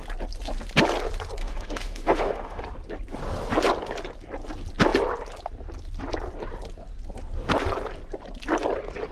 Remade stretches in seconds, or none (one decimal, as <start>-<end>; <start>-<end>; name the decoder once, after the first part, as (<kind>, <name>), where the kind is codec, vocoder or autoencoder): 1.4-2.6 (autoencoder, DAC-VAE)